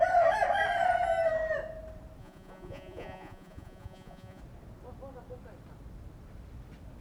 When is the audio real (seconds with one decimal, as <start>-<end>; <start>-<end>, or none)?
0.0-2.2; 4.4-7.0